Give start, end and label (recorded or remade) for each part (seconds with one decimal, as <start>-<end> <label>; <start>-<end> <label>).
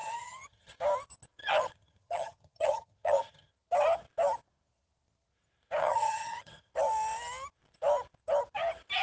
0.0-0.7 remade; 0.7-1.4 recorded; 1.4-3.5 remade; 3.5-5.8 recorded; 5.8-6.7 remade; 6.7-9.0 recorded